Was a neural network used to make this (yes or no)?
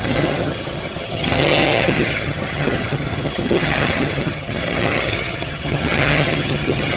yes